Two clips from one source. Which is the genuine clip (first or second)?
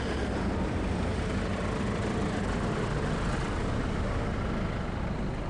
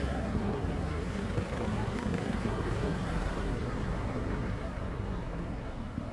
first